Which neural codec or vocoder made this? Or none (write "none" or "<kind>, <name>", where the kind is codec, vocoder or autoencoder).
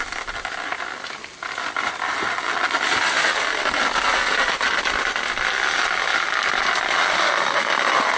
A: none